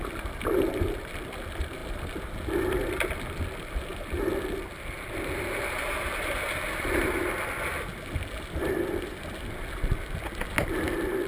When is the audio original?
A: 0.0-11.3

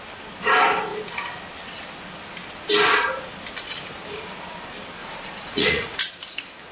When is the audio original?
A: 0.0-5.0; 6.0-6.7

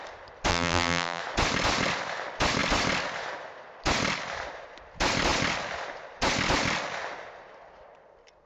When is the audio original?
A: 0.0-0.5; 1.2-8.5